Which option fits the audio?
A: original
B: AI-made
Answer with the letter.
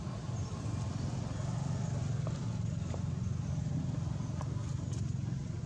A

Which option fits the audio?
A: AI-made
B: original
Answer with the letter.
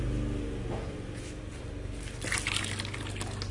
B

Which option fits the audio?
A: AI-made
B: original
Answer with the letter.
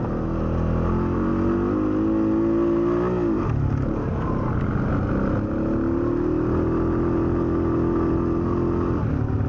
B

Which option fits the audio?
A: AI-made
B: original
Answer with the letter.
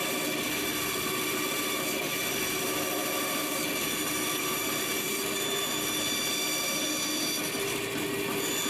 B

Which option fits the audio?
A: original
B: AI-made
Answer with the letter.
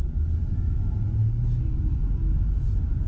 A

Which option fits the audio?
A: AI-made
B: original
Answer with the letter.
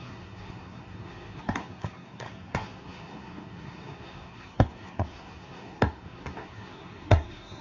A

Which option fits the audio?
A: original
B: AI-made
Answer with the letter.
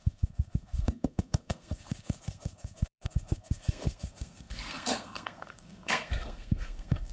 B